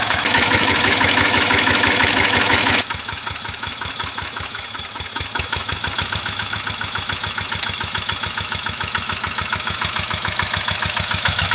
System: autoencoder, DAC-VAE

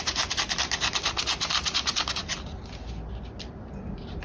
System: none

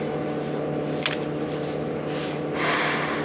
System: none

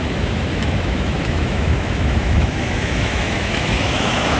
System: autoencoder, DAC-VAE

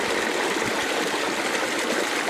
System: none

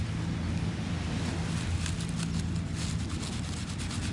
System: none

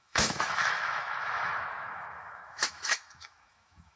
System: autoencoder, DAC-VAE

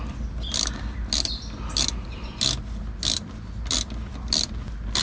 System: none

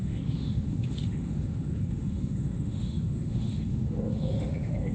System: autoencoder, DAC-VAE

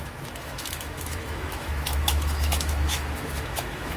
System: autoencoder, DAC-VAE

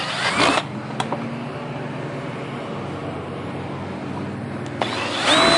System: none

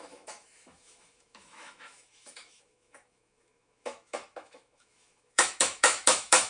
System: autoencoder, DAC-VAE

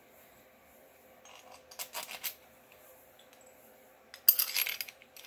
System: none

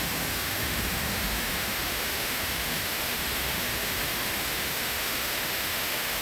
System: autoencoder, DAC-VAE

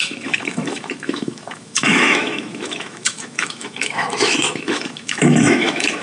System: autoencoder, DAC-VAE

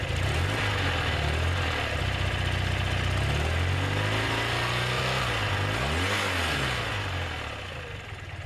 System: none